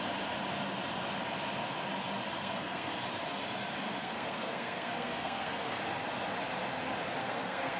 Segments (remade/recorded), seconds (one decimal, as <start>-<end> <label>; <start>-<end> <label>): 0.0-2.4 recorded; 2.4-2.9 remade; 2.9-4.0 recorded; 4.0-5.8 remade; 5.8-7.2 recorded; 7.2-7.8 remade